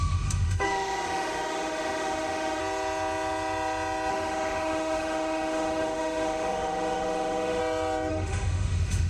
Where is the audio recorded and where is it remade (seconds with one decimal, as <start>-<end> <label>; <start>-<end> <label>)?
0.0-2.6 remade; 2.6-4.1 recorded; 4.1-7.6 remade; 7.6-8.1 recorded; 8.1-9.1 remade